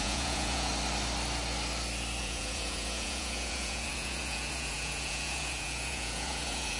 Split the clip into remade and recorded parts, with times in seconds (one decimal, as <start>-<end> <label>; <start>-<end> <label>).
0.0-0.7 remade; 0.7-2.2 recorded; 2.2-6.8 remade